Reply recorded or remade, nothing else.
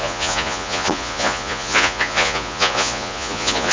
remade